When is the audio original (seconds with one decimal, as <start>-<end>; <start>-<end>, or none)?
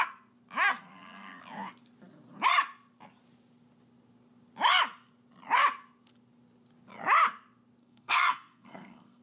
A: 0.0-0.7; 1.4-7.8